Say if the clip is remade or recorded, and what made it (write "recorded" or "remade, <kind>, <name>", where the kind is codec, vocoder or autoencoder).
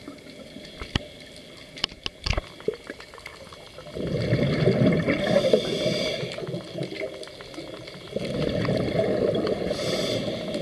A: recorded